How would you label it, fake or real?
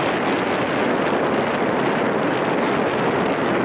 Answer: real